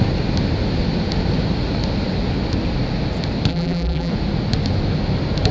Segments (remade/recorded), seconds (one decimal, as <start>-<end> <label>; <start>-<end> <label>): 0.0-3.5 recorded; 3.5-4.1 remade; 4.1-5.5 recorded